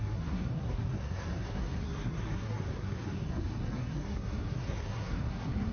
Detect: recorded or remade remade